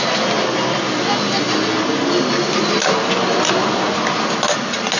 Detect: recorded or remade recorded